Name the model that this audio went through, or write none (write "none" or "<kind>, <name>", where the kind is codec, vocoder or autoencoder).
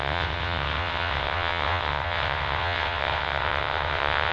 vocoder, WaveNeXt